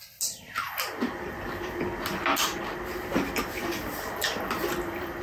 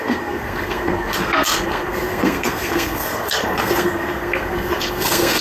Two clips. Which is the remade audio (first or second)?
second